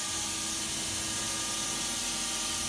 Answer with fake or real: real